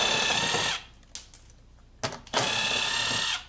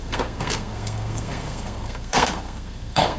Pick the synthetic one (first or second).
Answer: second